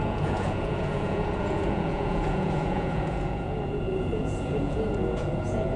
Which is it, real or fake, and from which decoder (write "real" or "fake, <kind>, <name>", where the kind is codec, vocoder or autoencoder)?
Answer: fake, vocoder, Vocos